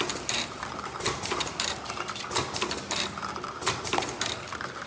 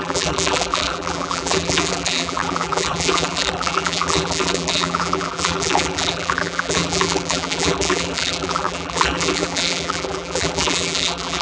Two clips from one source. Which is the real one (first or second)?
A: first